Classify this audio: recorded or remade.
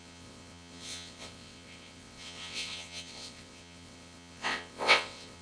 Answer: remade